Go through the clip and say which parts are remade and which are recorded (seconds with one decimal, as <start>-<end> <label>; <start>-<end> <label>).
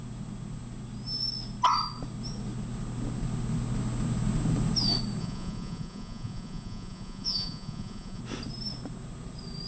0.0-5.2 recorded; 5.2-8.2 remade; 8.2-9.7 recorded